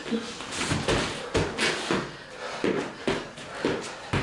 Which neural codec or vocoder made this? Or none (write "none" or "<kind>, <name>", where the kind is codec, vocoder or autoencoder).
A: none